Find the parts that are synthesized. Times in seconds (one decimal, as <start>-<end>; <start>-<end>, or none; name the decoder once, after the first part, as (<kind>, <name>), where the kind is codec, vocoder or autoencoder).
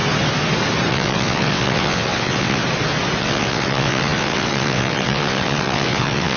0.9-2.6 (vocoder, WaveNeXt); 3.2-6.4